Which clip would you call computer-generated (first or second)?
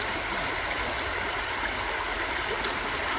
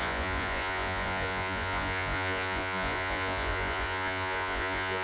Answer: second